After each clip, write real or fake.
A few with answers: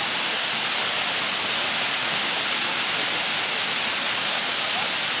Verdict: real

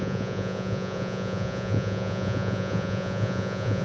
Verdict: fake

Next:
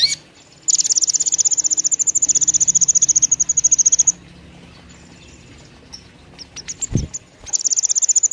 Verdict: real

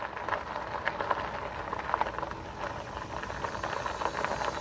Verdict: real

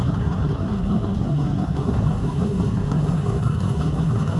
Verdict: fake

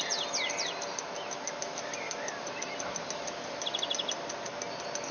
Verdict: real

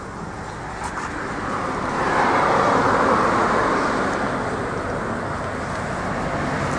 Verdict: real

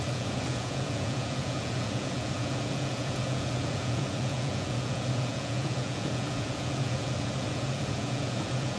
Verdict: fake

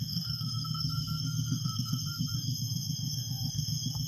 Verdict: fake